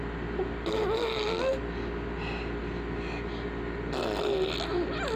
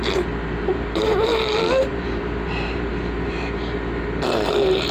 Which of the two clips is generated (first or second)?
second